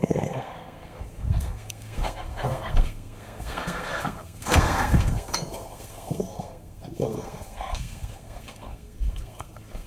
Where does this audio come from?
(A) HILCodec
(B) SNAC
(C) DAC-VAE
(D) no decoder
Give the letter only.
B